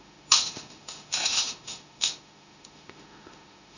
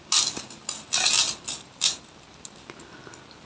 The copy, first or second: first